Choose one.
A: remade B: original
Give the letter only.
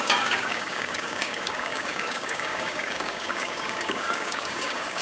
A